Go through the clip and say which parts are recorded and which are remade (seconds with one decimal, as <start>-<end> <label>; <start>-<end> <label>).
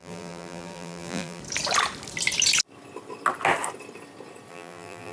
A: 0.0-1.4 remade; 1.4-4.5 recorded; 4.5-5.1 remade